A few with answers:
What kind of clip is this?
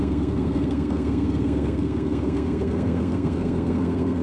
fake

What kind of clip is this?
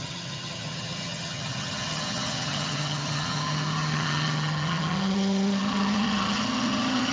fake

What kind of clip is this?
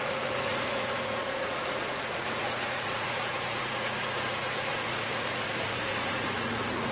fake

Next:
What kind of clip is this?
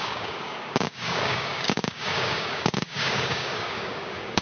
fake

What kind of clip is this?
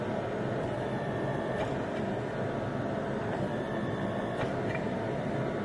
real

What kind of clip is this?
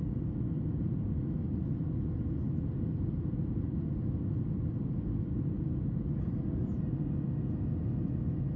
real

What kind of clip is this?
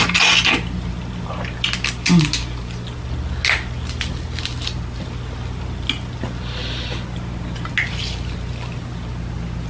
real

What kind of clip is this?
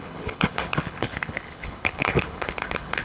fake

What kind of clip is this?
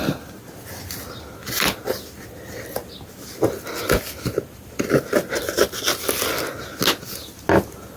real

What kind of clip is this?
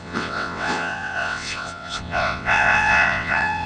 fake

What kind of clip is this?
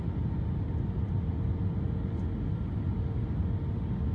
real